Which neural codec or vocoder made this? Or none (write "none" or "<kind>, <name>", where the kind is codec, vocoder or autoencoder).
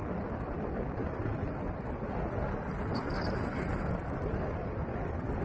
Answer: none